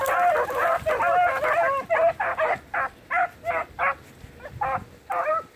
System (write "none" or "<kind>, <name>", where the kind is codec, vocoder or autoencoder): none